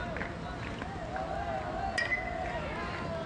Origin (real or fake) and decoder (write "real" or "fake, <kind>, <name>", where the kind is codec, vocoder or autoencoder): real